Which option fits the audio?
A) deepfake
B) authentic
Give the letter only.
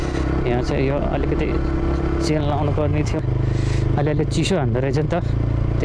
B